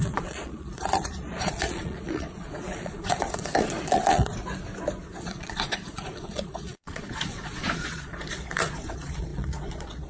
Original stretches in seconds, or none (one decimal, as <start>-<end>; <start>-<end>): 4.4-5.1